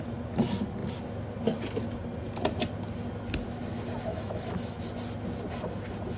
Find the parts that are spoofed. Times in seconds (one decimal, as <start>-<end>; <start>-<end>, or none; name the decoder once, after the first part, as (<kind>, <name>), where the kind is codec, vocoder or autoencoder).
4.1-4.8 (autoencoder, DAC-VAE)